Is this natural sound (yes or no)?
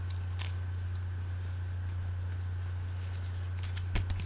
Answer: yes